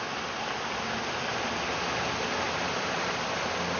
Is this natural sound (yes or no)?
yes